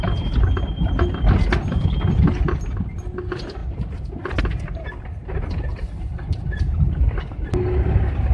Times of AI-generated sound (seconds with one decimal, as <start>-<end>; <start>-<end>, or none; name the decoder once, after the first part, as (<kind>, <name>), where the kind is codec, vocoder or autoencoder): 5.7-6.8 (vocoder, BigVGAN v2)